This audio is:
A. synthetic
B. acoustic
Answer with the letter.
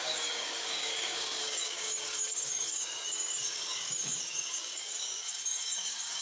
A